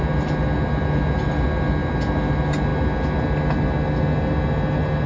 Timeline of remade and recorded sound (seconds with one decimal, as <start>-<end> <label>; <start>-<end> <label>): 0.0-5.1 recorded